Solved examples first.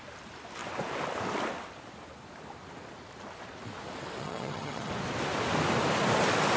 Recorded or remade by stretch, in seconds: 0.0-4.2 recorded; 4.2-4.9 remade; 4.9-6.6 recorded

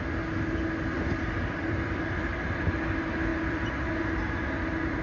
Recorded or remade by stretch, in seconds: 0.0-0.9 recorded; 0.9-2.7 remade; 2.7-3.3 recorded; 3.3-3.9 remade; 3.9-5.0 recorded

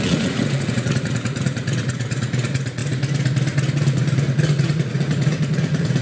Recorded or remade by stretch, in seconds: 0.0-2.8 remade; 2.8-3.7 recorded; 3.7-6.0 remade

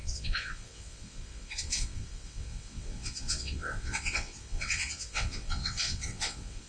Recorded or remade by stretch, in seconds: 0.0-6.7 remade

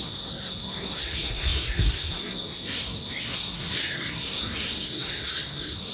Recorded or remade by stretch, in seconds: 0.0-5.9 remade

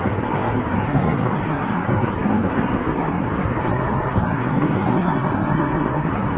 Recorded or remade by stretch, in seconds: 0.0-6.4 remade